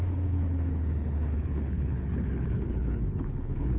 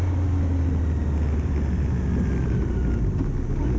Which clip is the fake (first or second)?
first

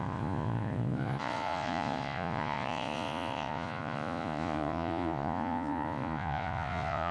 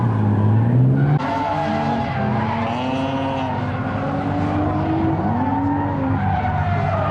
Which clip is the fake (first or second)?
first